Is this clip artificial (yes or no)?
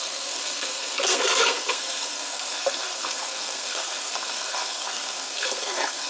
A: yes